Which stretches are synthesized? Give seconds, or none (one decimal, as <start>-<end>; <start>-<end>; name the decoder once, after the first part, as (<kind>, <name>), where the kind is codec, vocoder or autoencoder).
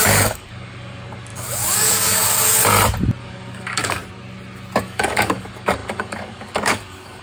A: 0.0-2.6 (codec, DAC); 3.2-4.0; 4.8-7.2